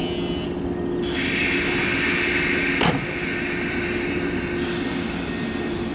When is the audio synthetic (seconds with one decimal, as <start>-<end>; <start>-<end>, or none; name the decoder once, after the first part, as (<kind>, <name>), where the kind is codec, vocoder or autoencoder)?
none